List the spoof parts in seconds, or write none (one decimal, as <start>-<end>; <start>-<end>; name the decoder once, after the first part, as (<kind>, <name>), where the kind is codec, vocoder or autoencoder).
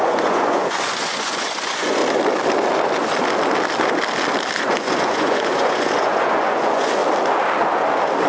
0.0-2.0 (vocoder, Vocos); 4.6-7.0